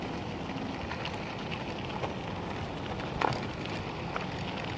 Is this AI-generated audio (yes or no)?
no